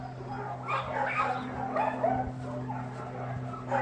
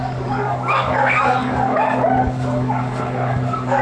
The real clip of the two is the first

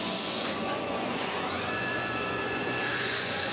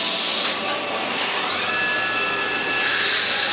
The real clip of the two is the second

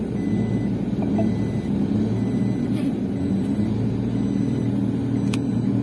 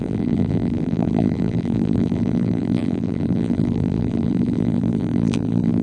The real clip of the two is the first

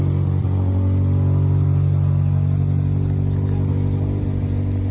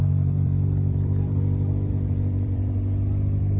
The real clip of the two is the first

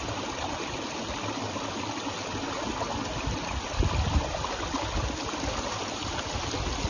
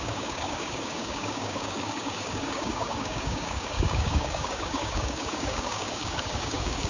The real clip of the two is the first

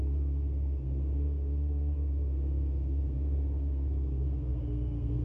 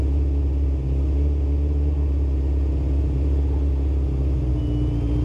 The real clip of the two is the second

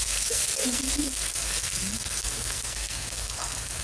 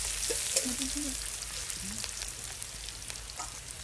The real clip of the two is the second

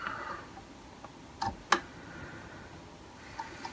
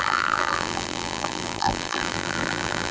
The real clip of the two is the first